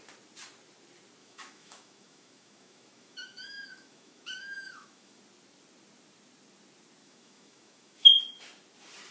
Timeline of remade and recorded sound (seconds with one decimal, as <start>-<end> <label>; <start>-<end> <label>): 0.0-1.2 recorded; 1.2-5.2 remade; 5.2-7.0 recorded; 7.0-8.2 remade; 8.2-9.1 recorded